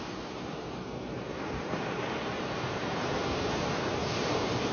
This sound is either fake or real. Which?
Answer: fake